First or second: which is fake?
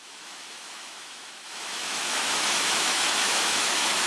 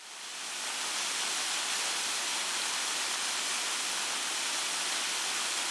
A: first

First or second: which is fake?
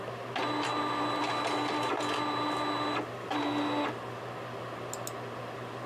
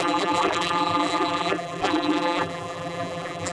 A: second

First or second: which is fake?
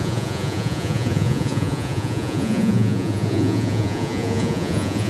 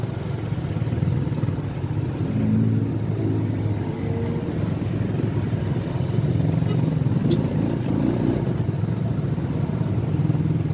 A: first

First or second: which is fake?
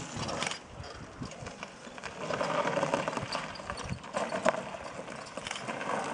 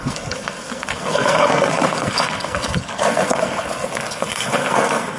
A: second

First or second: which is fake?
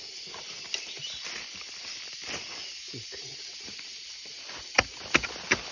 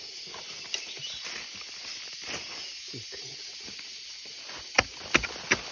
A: first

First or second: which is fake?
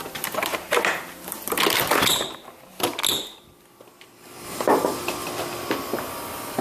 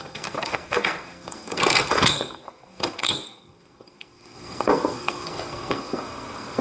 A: second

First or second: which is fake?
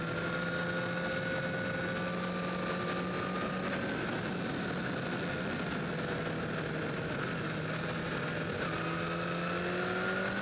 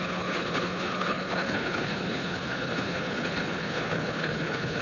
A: second